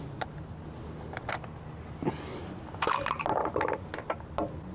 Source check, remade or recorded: recorded